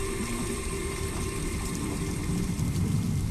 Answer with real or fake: fake